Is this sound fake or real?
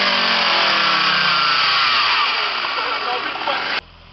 real